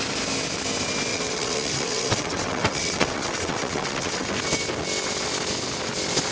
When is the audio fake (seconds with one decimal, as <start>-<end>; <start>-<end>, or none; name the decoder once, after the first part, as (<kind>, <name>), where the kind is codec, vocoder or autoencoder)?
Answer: 1.1-4.3 (vocoder, WaveNeXt)